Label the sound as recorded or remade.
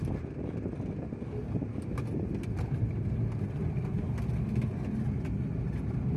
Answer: recorded